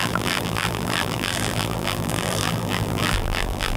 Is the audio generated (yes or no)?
yes